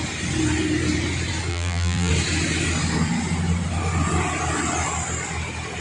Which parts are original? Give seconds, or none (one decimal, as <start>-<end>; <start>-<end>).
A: 0.0-1.5; 2.1-5.8